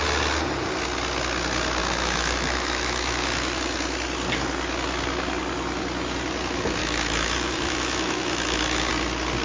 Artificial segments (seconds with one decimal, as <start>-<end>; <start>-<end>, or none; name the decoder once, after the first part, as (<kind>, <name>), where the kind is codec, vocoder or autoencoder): 1.8-3.6 (autoencoder, DAC-VAE); 6.8-8.9